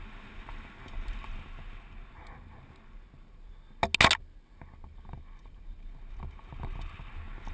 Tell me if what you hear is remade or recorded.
recorded